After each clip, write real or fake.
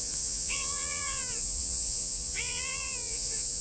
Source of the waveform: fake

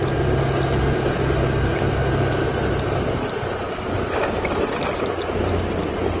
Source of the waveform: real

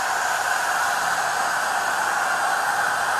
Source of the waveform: real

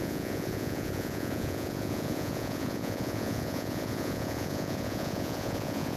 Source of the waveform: fake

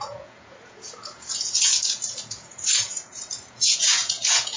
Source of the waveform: fake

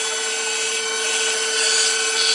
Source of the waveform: real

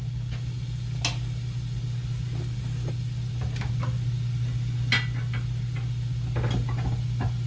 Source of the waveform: real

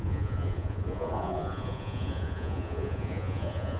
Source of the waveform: fake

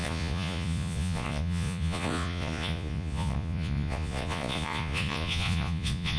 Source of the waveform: fake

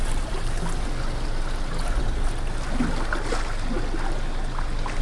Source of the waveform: real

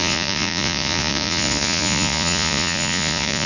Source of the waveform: fake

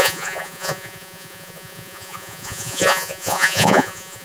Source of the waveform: fake